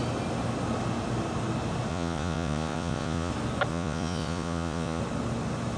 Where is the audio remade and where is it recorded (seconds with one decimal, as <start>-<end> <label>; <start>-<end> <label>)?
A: 0.0-1.9 recorded; 1.9-3.3 remade; 3.3-3.7 recorded; 3.7-5.0 remade; 5.0-5.8 recorded